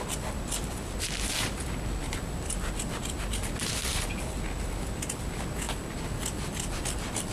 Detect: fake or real real